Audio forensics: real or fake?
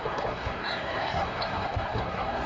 fake